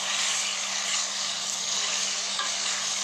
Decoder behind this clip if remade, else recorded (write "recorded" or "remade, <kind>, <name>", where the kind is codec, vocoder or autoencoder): remade, codec, DAC